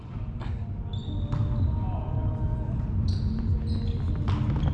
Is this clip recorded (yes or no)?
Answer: yes